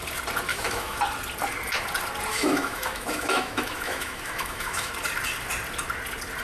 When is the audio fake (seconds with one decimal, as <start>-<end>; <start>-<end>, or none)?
0.5-1.0; 2.3-4.9